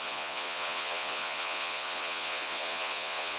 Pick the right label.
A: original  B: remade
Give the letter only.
B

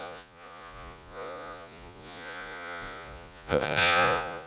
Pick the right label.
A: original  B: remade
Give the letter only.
B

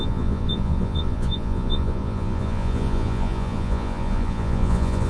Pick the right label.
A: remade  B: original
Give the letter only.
A